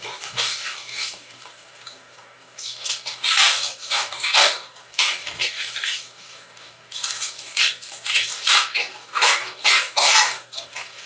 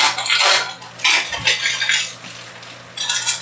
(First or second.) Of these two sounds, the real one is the second